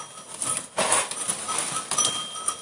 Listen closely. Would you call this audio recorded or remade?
recorded